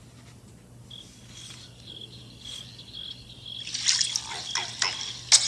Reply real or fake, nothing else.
real